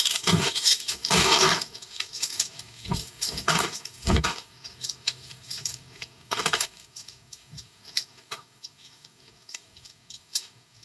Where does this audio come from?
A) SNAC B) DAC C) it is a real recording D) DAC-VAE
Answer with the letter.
B